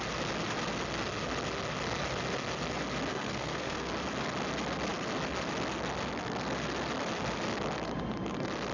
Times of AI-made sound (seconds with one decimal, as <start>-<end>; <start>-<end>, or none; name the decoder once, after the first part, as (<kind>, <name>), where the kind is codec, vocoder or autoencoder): 3.1-3.9 (codec, SNAC)